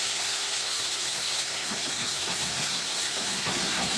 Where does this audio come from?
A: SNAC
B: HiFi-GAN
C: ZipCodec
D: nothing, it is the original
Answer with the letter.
A